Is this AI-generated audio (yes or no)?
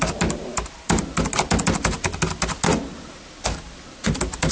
no